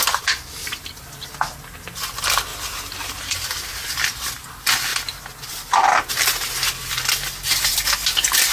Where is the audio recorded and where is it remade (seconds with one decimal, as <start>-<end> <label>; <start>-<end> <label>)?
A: 0.0-0.6 recorded; 0.6-1.3 remade; 1.3-2.5 recorded; 2.5-3.7 remade; 3.7-8.5 recorded